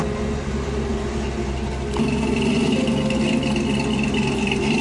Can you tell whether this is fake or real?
real